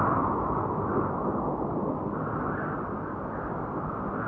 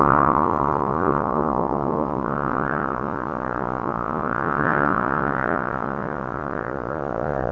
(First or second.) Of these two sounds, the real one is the first